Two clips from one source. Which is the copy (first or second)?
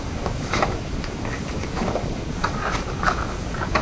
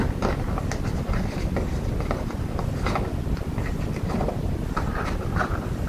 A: first